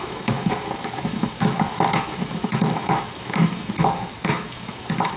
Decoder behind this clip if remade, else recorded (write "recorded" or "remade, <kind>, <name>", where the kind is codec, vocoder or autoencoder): remade, autoencoder, DAC-VAE